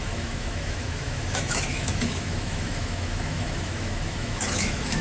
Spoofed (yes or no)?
yes